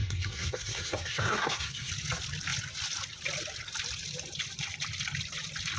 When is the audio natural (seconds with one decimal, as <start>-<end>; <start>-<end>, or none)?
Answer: 1.9-5.8